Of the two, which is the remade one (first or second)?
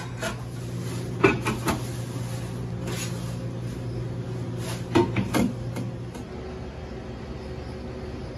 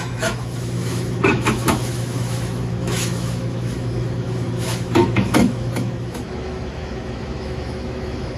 second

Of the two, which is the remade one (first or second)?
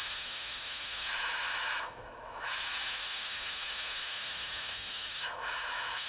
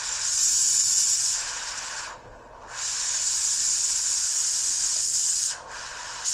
first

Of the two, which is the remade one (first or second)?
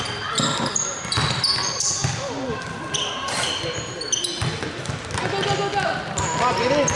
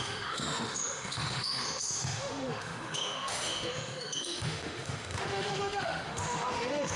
second